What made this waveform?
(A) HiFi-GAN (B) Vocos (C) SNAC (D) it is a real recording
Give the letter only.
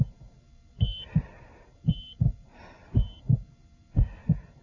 D